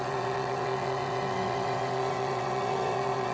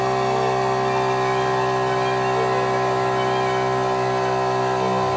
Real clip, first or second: second